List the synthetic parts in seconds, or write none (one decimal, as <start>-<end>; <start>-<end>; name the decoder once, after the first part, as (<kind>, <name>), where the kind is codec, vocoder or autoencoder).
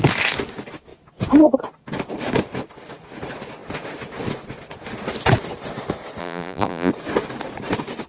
6.2-6.9 (vocoder, BigVGAN v2)